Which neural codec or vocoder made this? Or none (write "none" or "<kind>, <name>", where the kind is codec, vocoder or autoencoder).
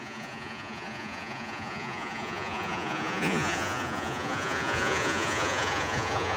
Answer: vocoder, Vocos